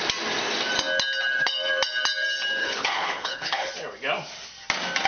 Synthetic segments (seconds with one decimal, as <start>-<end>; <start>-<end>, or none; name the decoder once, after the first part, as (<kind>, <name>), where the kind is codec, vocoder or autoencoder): 2.6-3.7 (codec, HILCodec)